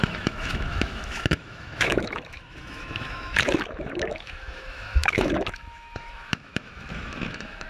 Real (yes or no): no